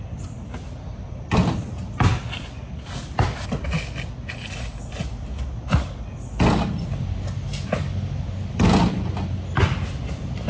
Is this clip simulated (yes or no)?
no